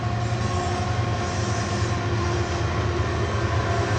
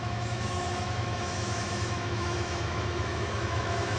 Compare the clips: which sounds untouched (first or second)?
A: first